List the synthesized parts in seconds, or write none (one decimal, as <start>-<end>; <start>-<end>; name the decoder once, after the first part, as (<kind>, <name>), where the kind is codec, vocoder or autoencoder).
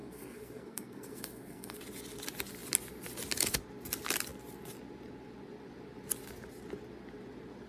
0.0-1.8 (codec, SNAC)